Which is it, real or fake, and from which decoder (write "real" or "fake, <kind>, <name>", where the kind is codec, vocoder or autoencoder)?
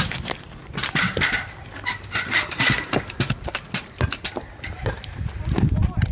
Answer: real